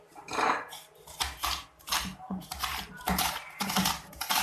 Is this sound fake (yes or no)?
yes